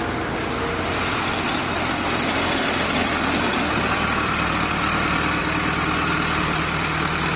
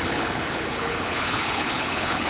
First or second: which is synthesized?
second